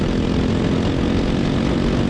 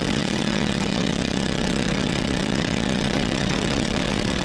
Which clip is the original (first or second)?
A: first